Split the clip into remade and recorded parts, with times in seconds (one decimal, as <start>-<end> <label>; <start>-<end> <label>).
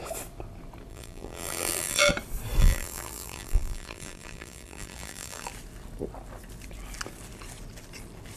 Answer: 0.0-0.9 recorded; 0.9-2.1 remade; 2.1-2.6 recorded; 2.6-5.5 remade; 5.5-8.4 recorded